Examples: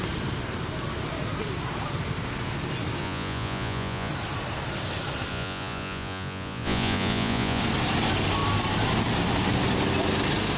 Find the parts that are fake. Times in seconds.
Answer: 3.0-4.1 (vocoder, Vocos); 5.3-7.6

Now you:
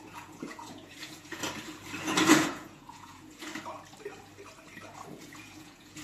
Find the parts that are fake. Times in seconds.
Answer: 0.0-1.4 (vocoder, Vocos); 2.3-3.5; 5.1-6.0

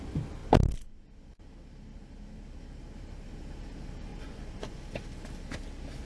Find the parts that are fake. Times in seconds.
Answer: 4.1-4.8 (vocoder, Vocos)

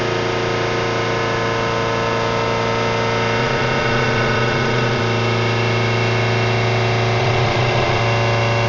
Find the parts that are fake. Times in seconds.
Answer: 3.4-5.0 (vocoder, Vocos); 7.2-8.0